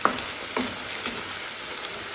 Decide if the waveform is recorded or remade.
recorded